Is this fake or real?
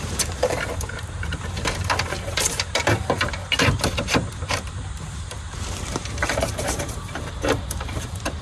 fake